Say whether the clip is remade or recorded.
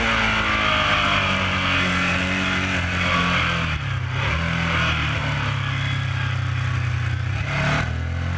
recorded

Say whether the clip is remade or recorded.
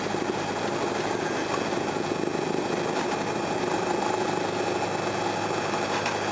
recorded